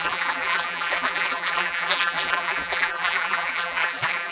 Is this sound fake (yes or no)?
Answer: yes